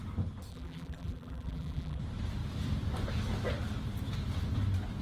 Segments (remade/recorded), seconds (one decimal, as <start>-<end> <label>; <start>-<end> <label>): 0.0-0.5 recorded; 0.5-2.0 remade; 2.0-5.0 recorded